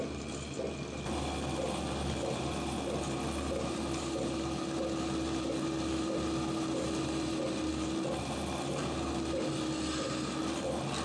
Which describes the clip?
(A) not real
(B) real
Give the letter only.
B